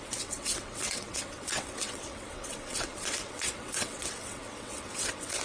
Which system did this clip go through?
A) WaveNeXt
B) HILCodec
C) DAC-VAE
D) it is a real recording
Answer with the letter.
A